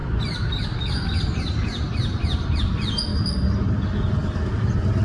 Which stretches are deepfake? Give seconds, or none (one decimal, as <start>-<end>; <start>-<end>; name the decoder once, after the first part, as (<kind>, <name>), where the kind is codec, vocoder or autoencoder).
none